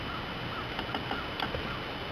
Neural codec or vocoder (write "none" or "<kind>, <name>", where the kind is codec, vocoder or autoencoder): none